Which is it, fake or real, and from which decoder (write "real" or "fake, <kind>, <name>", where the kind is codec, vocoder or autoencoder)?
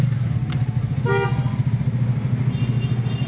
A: real